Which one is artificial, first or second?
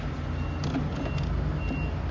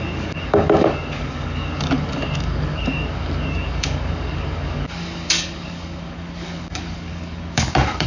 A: second